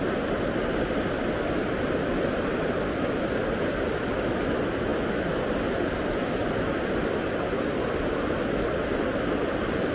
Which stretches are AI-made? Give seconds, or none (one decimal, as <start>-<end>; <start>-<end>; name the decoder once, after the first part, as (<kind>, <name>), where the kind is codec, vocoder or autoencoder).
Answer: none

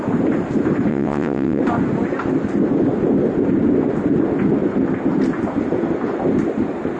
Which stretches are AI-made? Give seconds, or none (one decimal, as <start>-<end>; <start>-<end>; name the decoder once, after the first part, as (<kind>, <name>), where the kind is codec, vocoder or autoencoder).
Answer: 0.9-1.6 (vocoder, WaveNeXt)

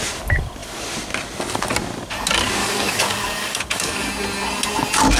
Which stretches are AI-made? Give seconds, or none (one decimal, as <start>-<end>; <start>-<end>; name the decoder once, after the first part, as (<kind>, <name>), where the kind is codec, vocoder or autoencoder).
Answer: 2.6-4.1 (codec, DAC)

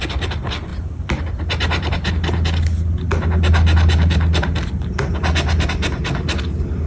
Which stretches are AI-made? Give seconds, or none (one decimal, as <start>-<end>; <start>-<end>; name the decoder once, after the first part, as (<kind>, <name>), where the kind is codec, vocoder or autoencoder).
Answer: 0.7-2.1 (vocoder, BigVGAN v2)